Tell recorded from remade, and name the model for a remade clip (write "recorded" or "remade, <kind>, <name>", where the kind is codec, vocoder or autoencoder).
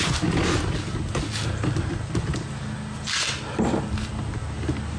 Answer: recorded